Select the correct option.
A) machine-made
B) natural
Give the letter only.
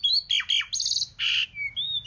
B